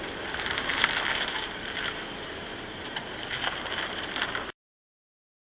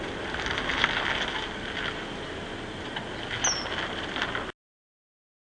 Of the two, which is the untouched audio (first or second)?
second